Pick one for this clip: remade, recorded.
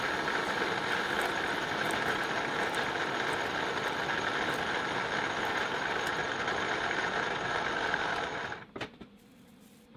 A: recorded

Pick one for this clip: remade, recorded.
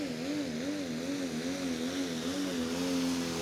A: recorded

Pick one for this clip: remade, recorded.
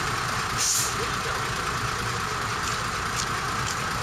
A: recorded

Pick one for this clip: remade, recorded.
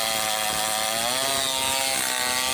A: recorded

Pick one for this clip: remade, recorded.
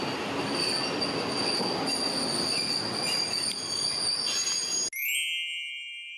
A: recorded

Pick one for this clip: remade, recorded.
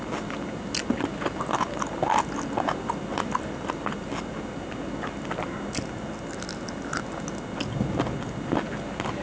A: recorded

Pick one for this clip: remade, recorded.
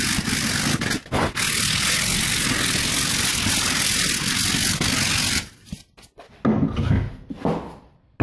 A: recorded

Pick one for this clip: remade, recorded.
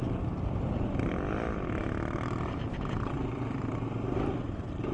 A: recorded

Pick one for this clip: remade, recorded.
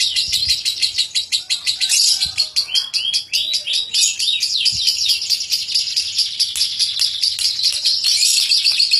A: recorded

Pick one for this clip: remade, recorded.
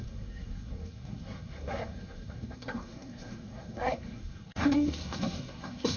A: remade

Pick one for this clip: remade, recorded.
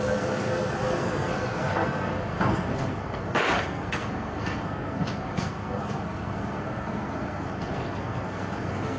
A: remade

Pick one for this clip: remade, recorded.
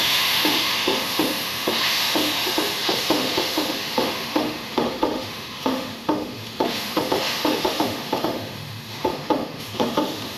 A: remade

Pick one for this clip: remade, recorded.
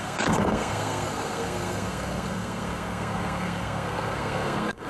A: remade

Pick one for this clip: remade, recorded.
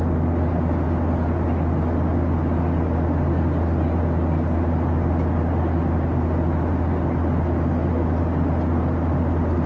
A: recorded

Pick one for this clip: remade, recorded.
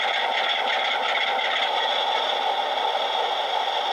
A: recorded